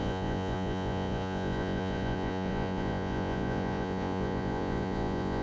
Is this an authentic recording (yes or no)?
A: no